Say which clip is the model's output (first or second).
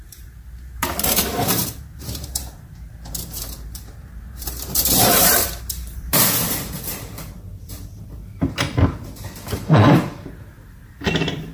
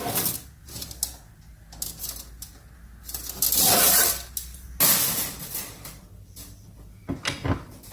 first